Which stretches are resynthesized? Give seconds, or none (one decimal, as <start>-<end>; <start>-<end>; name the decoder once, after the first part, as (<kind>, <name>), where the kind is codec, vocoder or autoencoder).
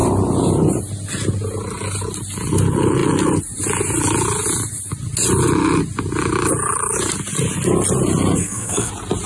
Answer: 8.4-8.9 (codec, SNAC)